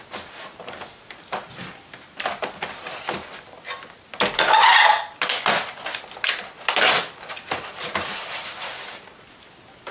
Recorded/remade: recorded